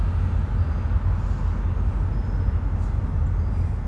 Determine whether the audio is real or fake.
real